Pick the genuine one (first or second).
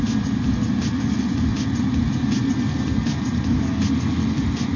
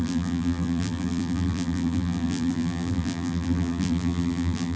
first